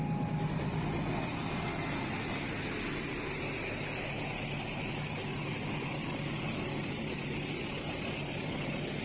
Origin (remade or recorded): recorded